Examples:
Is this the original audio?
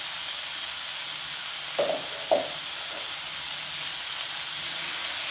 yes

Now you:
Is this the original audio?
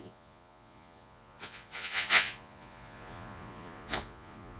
no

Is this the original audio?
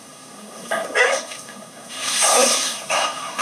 no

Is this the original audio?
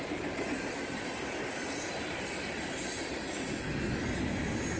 yes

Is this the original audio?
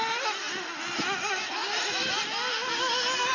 yes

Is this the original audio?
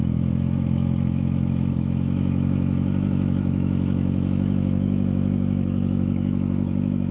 no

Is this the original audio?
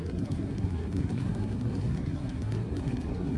no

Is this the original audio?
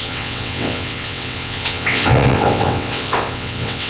no